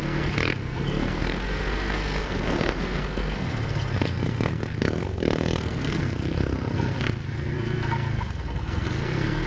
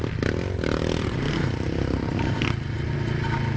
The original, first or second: second